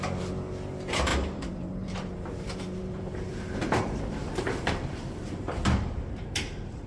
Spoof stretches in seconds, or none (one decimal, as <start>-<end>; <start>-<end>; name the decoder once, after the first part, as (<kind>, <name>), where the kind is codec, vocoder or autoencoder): 0.0-6.9 (vocoder, BigVGAN v2)